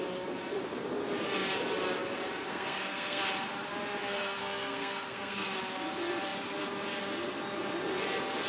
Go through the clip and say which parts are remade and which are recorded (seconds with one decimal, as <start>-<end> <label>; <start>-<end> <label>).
0.0-2.5 recorded; 2.5-3.2 remade; 3.2-4.0 recorded; 4.0-5.6 remade; 5.6-8.5 recorded